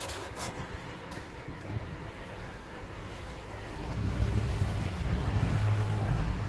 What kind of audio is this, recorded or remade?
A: remade